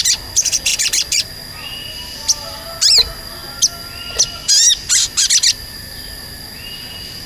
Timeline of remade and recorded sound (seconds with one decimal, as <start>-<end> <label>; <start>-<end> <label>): 0.0-0.7 recorded; 0.7-1.3 remade; 1.3-7.3 recorded

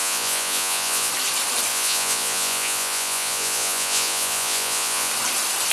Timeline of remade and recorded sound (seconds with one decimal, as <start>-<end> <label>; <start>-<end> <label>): 0.0-1.1 remade; 1.1-1.7 recorded; 1.7-5.1 remade; 5.1-5.7 recorded

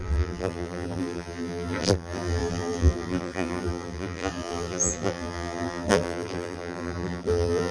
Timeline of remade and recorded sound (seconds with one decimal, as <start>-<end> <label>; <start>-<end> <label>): 0.0-7.7 remade

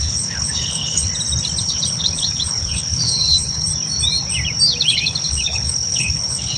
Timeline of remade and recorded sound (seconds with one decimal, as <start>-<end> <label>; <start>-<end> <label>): 0.0-1.1 remade; 1.1-1.6 recorded; 1.6-3.7 remade; 3.7-4.9 recorded; 4.9-6.6 remade

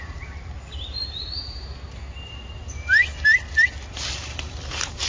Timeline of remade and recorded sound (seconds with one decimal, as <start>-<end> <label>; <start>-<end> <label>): 0.0-5.1 recorded

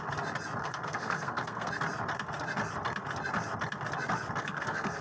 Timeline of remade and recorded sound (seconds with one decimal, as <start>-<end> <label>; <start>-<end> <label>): 0.0-0.6 recorded; 0.6-1.7 remade; 1.7-4.4 recorded; 4.4-5.0 remade

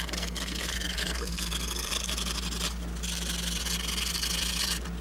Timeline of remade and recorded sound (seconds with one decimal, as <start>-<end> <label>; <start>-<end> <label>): 0.0-1.9 remade; 1.9-5.0 recorded